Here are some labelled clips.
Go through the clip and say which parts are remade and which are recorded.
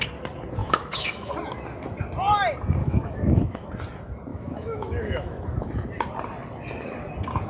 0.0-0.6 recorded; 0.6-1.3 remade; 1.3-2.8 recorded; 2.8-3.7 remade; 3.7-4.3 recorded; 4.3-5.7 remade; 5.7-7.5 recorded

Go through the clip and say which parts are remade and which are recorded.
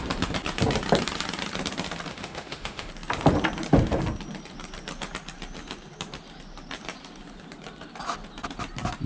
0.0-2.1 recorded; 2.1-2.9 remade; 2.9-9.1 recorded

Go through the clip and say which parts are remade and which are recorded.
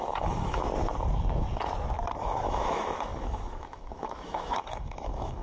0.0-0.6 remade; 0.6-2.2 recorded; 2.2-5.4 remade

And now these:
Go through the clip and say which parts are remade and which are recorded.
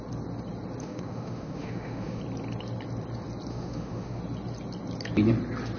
0.0-0.8 recorded; 0.8-2.2 remade; 2.2-3.5 recorded; 3.5-4.2 remade; 4.2-5.8 recorded